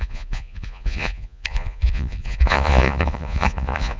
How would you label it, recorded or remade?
remade